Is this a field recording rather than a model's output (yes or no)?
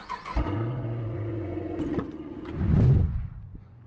no